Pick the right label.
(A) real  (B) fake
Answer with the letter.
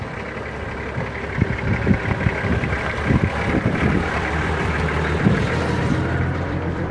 B